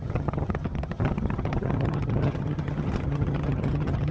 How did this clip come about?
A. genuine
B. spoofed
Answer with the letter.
B